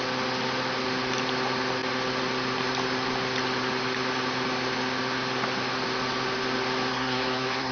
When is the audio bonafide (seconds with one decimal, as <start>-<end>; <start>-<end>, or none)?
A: 0.0-6.9